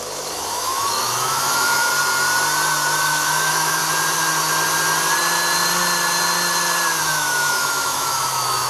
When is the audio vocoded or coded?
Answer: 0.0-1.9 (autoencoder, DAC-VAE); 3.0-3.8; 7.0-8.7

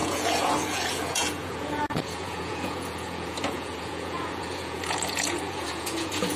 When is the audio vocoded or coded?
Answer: 0.0-6.4 (vocoder, Vocos)

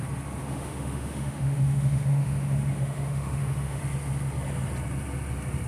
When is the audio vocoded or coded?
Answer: 0.4-3.8 (autoencoder, DAC-VAE)

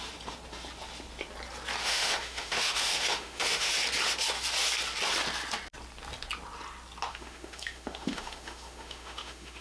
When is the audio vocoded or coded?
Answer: 1.8-3.7 (autoencoder, DAC-VAE); 7.1-9.6

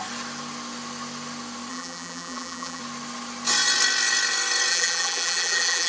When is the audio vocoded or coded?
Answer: 1.7-2.8 (vocoder, BigVGAN v2); 4.7-5.9

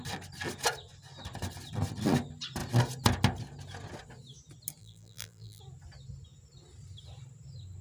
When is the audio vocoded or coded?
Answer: 4.8-5.6 (vocoder, BigVGAN v2)